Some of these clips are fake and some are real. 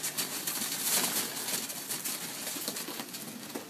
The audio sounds real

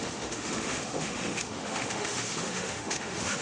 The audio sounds fake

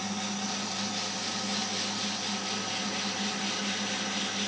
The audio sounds real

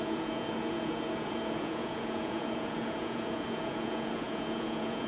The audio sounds fake